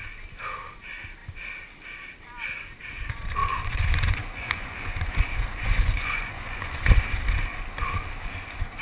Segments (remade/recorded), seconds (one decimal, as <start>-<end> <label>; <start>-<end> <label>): 0.0-3.4 recorded; 3.4-6.8 remade; 6.8-8.8 recorded